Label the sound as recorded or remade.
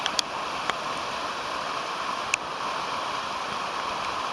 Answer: recorded